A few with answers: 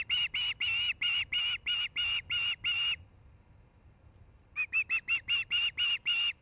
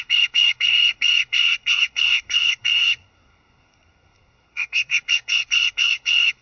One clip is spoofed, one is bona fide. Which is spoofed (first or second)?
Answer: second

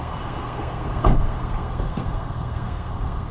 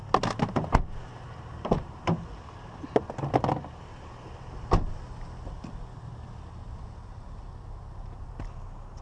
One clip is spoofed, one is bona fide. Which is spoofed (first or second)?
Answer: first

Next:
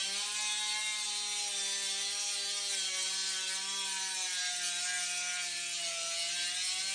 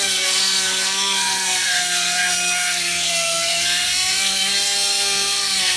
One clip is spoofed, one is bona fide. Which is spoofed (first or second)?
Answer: second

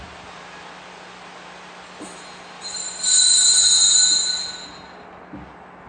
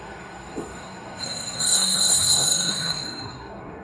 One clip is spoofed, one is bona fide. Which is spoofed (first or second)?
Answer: second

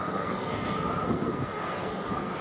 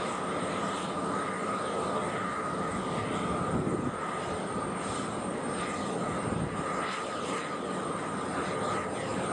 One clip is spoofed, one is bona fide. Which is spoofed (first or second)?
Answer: first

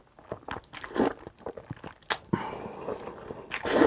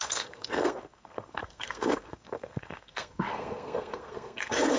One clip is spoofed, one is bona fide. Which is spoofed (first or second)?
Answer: second